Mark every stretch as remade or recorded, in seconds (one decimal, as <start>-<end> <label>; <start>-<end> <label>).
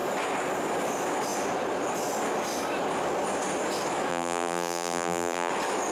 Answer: 0.0-4.1 recorded; 4.1-5.5 remade; 5.5-5.9 recorded